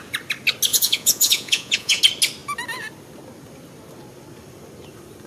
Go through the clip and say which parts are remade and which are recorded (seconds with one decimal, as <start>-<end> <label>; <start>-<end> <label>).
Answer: 0.0-0.7 recorded; 0.7-2.0 remade; 2.0-5.3 recorded